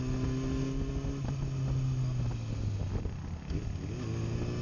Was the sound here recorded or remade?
recorded